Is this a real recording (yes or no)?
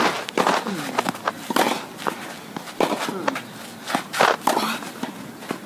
yes